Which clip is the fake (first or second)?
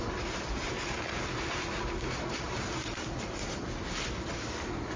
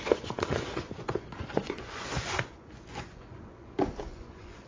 second